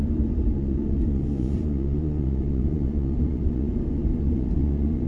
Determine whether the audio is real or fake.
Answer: fake